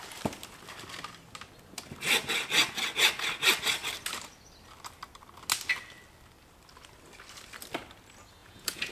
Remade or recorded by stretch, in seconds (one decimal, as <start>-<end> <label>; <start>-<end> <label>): 0.0-8.4 recorded; 8.4-8.9 remade